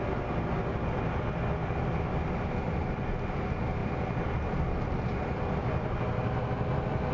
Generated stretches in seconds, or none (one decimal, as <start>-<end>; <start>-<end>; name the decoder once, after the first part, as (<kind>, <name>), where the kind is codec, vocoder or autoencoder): none